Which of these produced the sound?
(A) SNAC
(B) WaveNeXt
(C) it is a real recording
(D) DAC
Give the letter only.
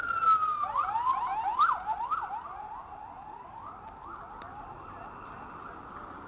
C